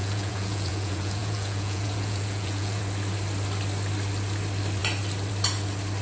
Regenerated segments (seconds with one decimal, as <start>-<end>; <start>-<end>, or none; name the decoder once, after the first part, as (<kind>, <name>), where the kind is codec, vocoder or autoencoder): 0.0-2.8 (vocoder, Vocos)